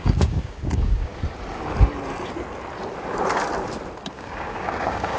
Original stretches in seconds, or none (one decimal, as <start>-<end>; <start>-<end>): 1.1-4.1